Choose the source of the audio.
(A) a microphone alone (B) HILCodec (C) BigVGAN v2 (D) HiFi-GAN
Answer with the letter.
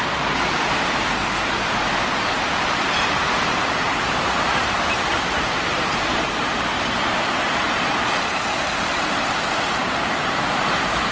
C